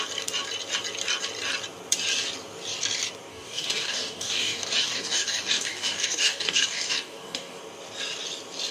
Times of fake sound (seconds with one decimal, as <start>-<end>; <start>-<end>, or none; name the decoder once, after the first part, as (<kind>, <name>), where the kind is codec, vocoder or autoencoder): 3.3-7.6 (codec, DAC)